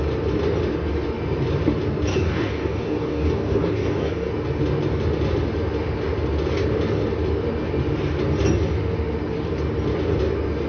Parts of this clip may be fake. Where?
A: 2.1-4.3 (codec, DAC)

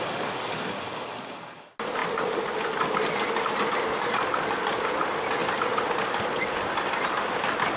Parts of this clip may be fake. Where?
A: none